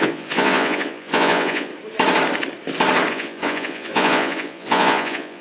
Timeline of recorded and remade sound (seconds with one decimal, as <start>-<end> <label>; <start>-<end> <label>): 0.0-1.7 remade; 1.7-3.1 recorded; 3.1-5.4 remade